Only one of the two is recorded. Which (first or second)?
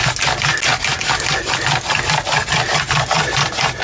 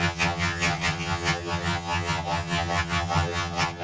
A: first